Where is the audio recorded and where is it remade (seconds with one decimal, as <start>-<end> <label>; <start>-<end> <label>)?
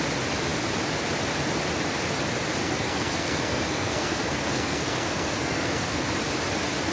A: 0.0-2.6 recorded; 2.6-6.0 remade; 6.0-6.9 recorded